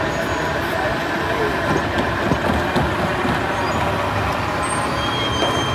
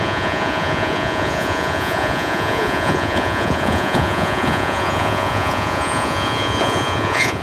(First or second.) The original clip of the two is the first